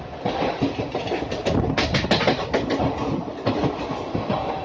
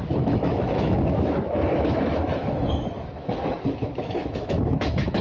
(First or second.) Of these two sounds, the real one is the first